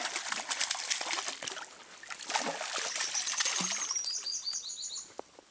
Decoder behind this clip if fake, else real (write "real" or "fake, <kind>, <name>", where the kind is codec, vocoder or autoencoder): real